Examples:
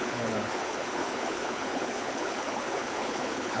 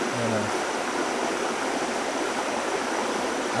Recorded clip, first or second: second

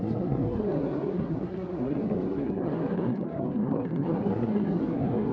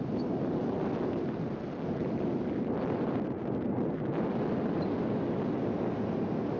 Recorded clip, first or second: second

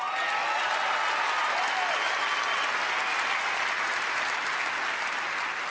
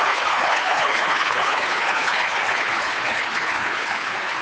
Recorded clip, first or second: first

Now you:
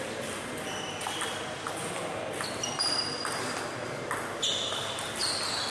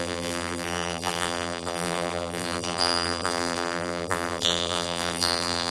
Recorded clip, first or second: first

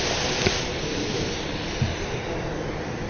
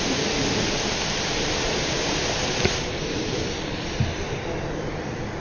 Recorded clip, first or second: first